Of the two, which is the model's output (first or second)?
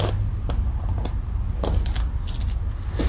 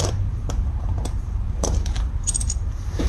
second